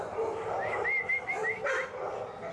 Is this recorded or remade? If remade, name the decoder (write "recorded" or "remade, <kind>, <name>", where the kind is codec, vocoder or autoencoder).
recorded